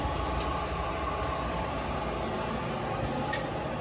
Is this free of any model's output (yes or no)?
yes